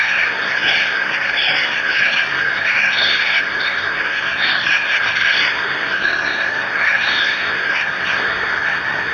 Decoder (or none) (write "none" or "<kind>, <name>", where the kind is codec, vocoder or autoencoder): codec, SNAC